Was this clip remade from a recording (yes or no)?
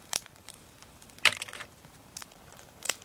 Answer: yes